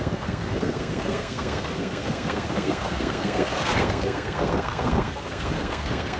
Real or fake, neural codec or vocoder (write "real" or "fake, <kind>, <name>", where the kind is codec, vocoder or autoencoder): fake, codec, SNAC